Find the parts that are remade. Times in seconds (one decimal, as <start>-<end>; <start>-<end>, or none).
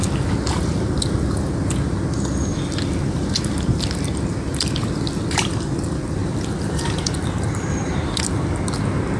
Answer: 2.5-3.3; 4.5-5.2; 6.2-8.6